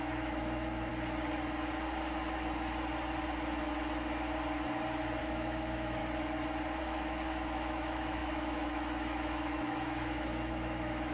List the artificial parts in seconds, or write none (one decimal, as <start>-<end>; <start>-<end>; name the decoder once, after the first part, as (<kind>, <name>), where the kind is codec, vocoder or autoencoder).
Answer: 0.0-0.9 (autoencoder, DAC-VAE); 5.2-6.0; 6.8-11.1